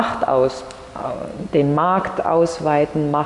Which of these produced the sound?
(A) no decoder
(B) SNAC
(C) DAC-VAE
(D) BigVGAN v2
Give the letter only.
A